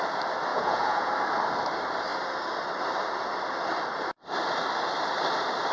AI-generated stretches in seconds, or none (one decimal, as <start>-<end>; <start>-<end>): 0.5-1.1